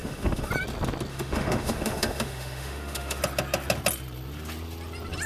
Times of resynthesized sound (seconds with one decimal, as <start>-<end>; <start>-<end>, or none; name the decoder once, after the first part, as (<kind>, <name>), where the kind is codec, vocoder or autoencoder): 0.0-0.5 (autoencoder, DAC-VAE); 1.1-3.2